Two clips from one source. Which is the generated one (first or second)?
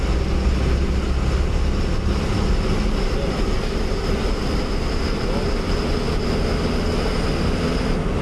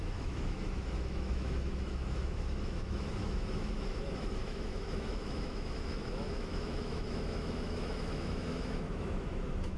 second